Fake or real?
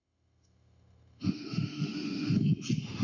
fake